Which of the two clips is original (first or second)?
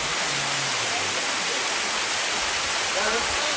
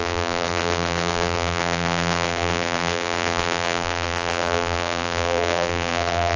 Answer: first